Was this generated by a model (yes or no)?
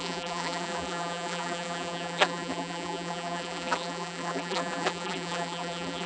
yes